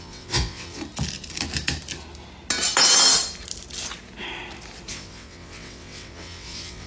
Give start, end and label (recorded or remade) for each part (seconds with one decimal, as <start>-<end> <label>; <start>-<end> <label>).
0.0-0.8 remade; 0.8-4.9 recorded; 4.9-6.9 remade